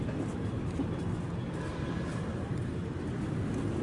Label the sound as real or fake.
real